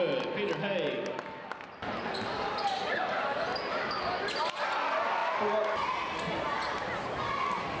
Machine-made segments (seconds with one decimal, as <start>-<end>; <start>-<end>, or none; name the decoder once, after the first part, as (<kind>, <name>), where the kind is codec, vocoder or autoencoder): none